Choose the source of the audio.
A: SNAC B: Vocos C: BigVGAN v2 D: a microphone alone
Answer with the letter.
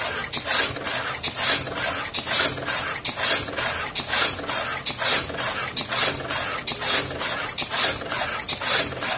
D